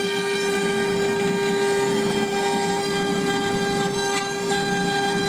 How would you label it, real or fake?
real